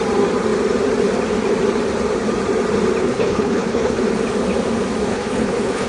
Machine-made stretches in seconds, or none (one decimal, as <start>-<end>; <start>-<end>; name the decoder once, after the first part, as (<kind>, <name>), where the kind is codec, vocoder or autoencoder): 3.0-4.0 (codec, HILCodec); 5.1-5.9